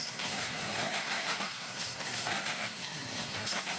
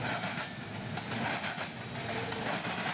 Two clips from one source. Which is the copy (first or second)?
first